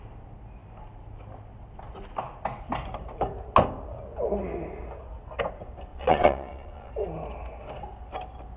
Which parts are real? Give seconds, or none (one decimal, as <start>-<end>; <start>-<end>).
0.0-5.9; 6.9-8.6